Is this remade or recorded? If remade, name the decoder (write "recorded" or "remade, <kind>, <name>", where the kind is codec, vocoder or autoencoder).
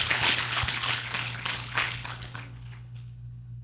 remade, codec, HILCodec